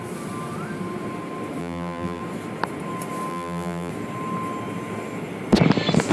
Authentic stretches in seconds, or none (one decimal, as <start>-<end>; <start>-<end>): 0.0-1.6; 2.2-3.3; 3.9-6.1